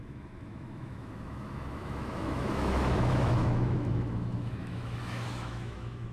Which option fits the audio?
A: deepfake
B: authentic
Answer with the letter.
A